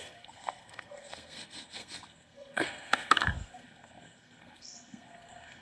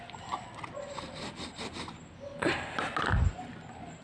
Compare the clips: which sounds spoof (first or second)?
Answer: first